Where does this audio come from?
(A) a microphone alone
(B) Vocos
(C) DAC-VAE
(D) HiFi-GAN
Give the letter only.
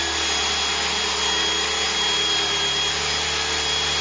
A